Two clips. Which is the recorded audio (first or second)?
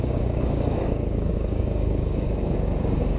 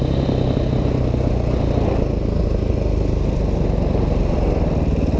second